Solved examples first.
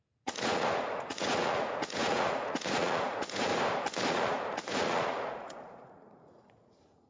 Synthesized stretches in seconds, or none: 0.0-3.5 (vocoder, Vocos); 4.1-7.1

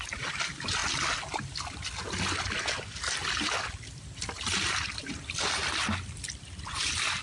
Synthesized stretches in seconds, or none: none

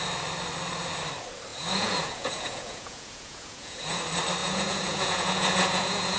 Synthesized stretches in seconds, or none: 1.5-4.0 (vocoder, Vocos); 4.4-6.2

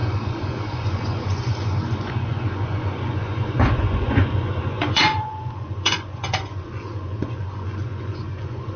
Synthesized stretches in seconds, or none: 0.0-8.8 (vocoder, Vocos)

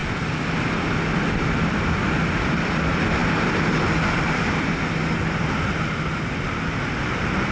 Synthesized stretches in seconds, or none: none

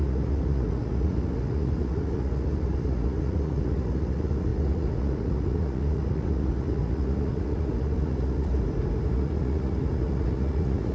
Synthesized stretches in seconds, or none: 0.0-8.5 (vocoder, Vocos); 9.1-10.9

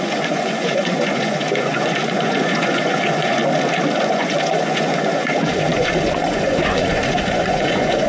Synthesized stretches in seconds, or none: 0.0-3.4 (vocoder, Vocos); 4.0-8.1